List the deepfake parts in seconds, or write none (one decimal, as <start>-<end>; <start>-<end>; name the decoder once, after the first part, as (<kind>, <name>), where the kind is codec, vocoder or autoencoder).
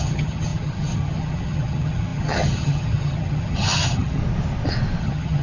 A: 0.0-4.2 (vocoder, HiFi-GAN); 5.0-5.4